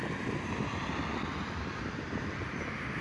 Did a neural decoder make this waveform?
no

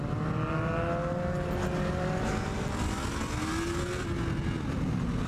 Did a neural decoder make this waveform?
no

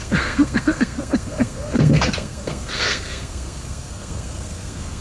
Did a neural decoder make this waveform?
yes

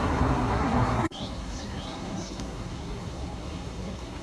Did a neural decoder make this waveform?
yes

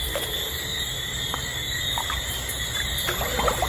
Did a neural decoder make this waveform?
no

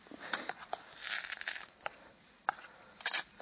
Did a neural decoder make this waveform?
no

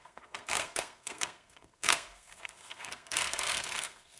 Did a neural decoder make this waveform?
yes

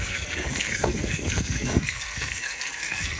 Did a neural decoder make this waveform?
yes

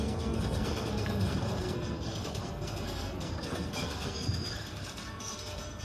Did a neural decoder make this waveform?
yes